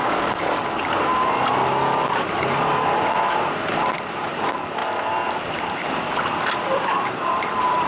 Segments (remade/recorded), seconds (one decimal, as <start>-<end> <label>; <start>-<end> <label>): 0.0-0.7 recorded; 0.7-1.1 remade; 1.1-2.1 recorded; 2.1-4.8 remade; 4.8-5.4 recorded; 5.4-7.9 remade